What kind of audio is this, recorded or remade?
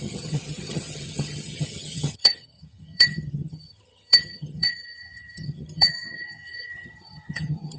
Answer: remade